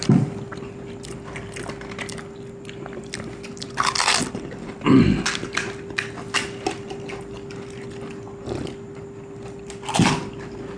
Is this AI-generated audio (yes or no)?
no